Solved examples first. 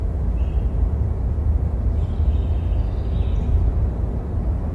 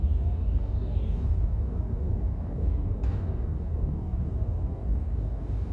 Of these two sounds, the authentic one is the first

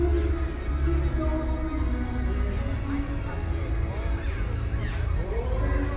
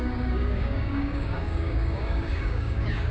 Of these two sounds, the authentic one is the first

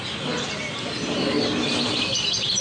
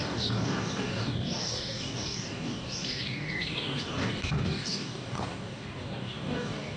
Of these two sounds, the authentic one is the first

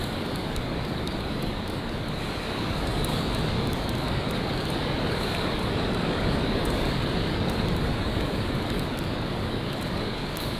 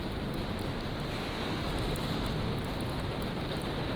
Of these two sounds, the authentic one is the second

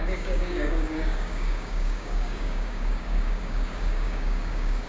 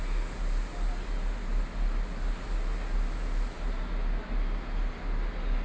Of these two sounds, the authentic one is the second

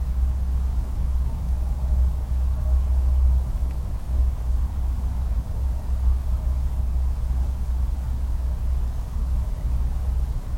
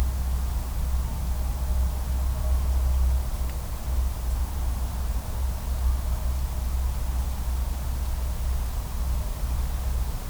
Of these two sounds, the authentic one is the second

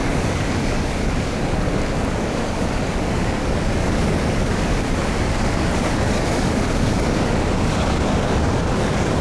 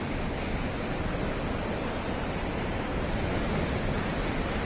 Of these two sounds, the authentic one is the second